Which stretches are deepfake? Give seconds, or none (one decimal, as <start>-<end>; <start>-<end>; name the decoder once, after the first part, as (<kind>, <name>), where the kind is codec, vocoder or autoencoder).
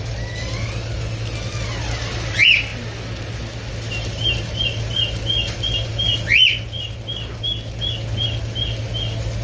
none